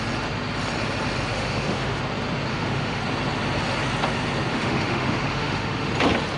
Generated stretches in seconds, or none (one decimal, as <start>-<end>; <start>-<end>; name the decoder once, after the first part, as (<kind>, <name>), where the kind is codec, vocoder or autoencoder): 1.3-2.0 (autoencoder, DAC-VAE); 2.5-3.0; 4.5-5.9